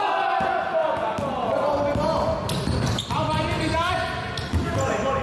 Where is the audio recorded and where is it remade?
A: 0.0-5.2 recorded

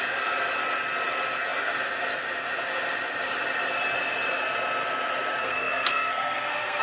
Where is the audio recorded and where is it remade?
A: 0.0-5.4 recorded; 5.4-6.8 remade

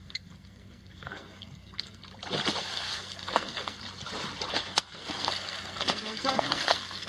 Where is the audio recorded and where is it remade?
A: 0.0-2.0 remade; 2.0-2.6 recorded; 2.6-3.8 remade; 3.8-4.5 recorded; 4.5-7.1 remade

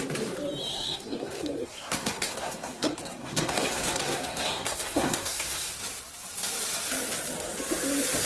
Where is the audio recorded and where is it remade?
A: 0.0-0.7 recorded; 0.7-5.7 remade; 5.7-8.3 recorded

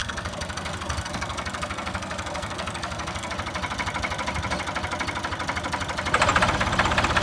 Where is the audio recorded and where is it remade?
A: 0.0-3.3 remade; 3.3-7.2 recorded

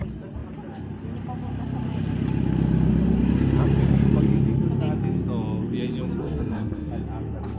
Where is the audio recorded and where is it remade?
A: 0.0-6.2 recorded; 6.2-6.9 remade; 6.9-7.6 recorded